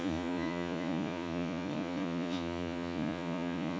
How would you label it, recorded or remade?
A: remade